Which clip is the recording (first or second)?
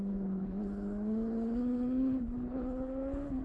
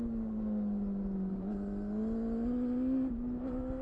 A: second